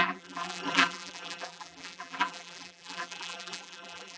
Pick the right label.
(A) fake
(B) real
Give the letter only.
A